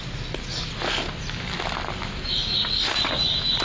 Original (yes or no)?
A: yes